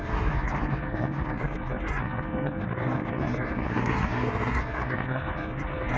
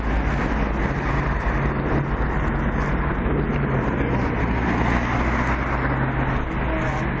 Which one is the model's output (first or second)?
first